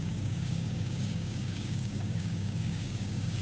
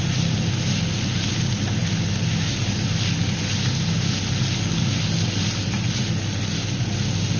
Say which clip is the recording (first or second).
second